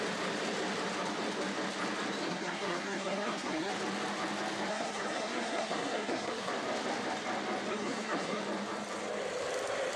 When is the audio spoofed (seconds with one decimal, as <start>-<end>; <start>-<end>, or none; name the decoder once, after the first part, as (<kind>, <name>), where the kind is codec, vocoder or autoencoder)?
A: 2.2-3.7 (codec, SNAC); 4.7-6.5; 7.7-8.4